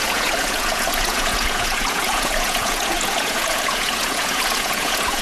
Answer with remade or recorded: remade